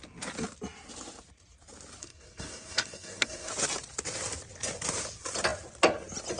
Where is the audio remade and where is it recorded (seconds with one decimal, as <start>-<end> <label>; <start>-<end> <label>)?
0.0-2.0 recorded; 2.0-3.5 remade; 3.5-6.4 recorded